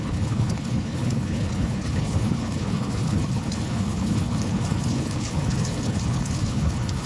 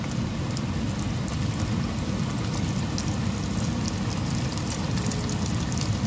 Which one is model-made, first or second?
first